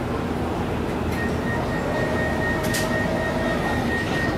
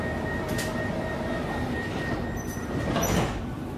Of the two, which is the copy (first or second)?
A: second